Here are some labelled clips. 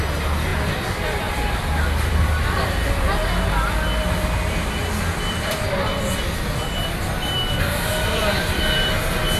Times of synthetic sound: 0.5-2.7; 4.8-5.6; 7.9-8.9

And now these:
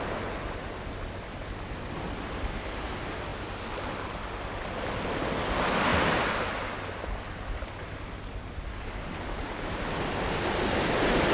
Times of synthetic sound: none

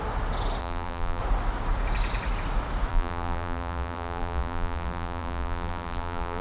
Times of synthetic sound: 0.6-1.2; 2.9-6.4

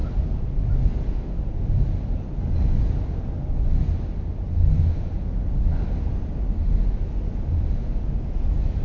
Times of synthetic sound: none

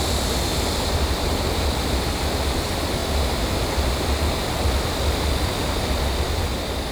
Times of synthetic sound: none